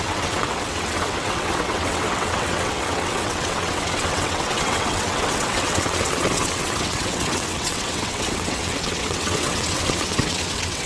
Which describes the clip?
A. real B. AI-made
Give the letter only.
B